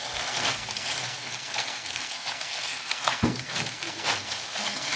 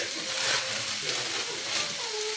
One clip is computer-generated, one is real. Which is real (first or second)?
second